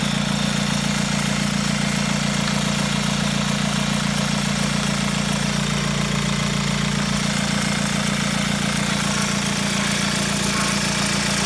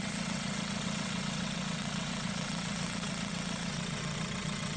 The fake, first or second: second